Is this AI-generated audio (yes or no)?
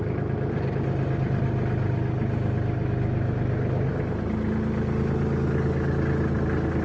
no